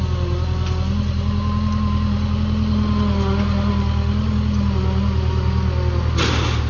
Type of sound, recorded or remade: recorded